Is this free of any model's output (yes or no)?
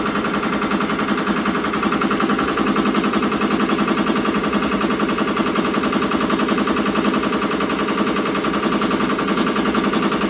yes